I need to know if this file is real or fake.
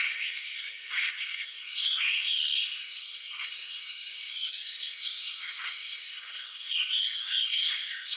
fake